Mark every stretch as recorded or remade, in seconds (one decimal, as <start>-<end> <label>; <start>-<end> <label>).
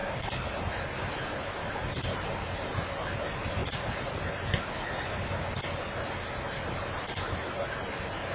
0.0-3.6 recorded; 3.6-4.2 remade; 4.2-8.3 recorded